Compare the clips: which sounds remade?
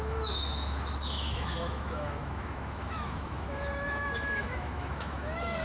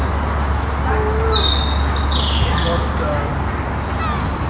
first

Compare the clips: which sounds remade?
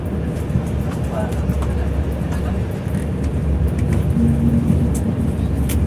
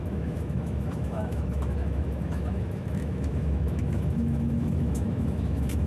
second